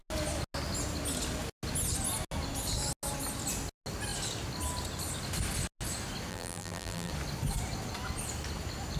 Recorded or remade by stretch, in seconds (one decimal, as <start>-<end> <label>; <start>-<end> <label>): 0.0-6.3 recorded; 6.3-7.1 remade; 7.1-9.0 recorded